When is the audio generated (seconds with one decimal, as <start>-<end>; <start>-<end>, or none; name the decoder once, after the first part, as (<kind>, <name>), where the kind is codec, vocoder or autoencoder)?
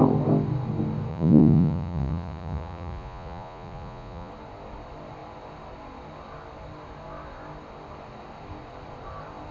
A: 1.1-4.3 (vocoder, Vocos)